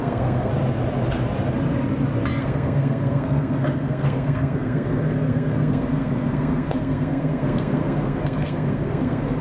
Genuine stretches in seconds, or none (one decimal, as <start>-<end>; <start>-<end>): 0.5-2.4